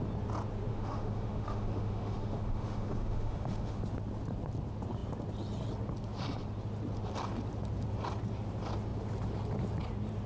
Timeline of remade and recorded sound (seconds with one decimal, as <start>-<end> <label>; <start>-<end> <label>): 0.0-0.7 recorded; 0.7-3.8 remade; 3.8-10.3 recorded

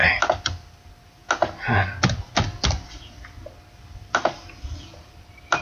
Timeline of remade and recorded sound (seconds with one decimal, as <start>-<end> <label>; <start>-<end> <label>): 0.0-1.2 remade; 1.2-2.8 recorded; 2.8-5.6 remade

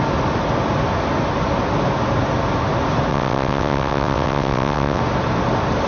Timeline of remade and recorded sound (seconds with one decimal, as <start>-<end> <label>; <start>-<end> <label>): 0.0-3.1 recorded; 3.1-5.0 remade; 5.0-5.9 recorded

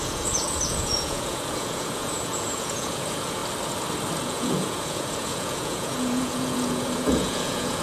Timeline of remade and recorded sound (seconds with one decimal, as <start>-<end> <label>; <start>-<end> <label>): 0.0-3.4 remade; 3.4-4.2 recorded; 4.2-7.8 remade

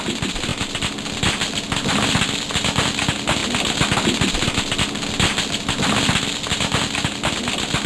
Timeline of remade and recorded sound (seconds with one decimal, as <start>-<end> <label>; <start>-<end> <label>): 0.0-7.9 recorded